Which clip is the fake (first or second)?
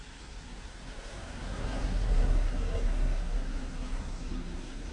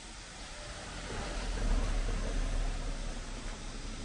first